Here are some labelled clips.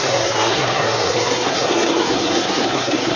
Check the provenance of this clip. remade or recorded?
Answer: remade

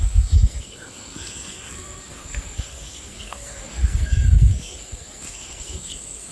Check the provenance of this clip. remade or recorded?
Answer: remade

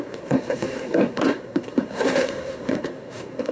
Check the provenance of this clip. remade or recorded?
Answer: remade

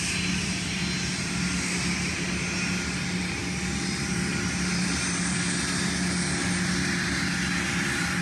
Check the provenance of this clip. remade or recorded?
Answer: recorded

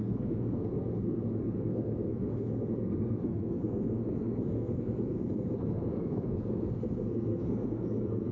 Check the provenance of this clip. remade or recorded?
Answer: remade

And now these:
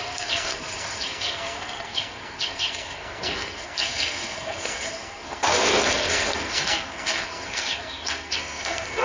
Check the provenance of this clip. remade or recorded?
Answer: remade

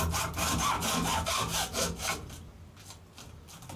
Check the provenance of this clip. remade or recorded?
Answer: recorded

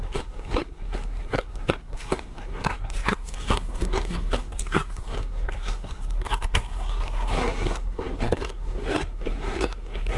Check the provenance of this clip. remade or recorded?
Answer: remade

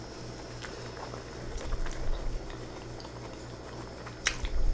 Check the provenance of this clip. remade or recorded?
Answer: recorded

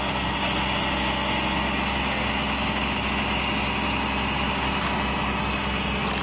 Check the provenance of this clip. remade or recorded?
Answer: recorded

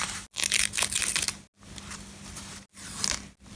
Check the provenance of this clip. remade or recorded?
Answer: recorded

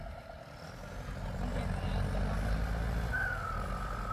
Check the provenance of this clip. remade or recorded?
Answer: recorded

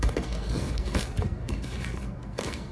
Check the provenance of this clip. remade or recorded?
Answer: remade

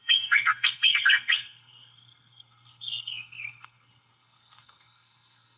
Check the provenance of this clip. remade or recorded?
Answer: remade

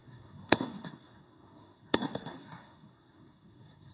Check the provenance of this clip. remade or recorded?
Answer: remade